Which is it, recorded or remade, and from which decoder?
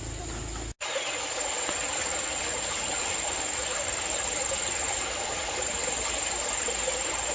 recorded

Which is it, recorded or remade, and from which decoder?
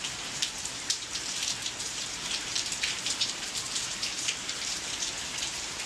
remade, vocoder, BigVGAN v2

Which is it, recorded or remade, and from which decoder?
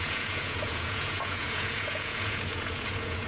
remade, vocoder, Vocos